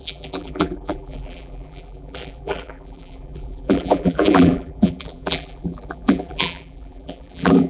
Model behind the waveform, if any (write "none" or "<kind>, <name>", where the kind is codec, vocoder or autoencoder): vocoder, BigVGAN v2